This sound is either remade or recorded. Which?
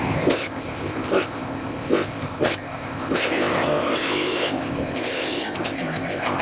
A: remade